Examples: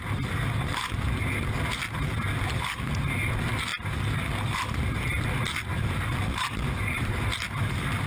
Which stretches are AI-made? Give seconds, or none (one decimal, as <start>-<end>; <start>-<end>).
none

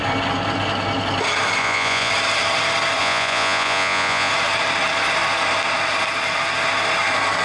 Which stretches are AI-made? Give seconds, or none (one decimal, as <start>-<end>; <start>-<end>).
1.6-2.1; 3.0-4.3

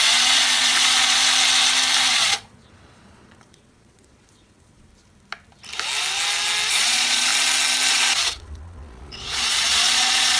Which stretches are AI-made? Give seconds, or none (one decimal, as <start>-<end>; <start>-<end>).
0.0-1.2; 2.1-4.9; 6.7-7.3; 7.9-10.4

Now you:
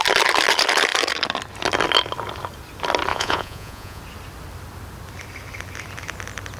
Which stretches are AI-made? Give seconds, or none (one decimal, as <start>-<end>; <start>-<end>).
3.1-4.0

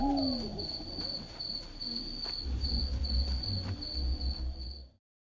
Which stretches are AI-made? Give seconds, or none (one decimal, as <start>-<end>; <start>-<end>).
none

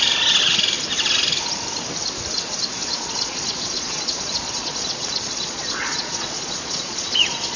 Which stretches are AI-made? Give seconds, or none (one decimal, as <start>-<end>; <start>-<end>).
2.8-7.6

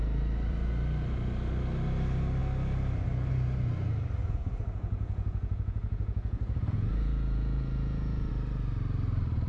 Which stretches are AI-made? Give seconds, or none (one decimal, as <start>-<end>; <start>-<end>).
4.2-8.3